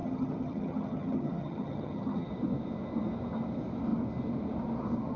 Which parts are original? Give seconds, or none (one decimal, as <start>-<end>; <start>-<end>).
2.3-5.2